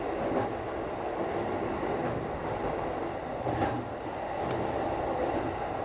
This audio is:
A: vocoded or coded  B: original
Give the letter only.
B